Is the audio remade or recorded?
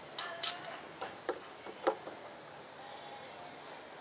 recorded